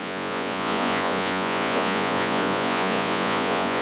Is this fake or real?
fake